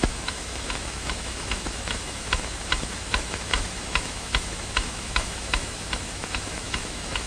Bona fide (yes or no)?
no